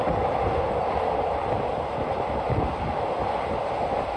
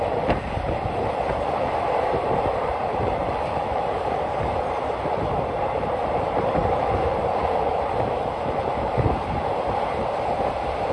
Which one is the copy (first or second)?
second